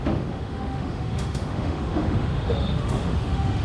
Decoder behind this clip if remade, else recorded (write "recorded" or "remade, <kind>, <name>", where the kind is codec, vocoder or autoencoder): remade, autoencoder, DAC-VAE